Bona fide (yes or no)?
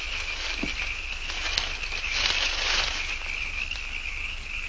yes